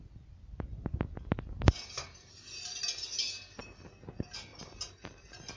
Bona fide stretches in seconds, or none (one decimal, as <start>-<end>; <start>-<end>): 0.0-4.5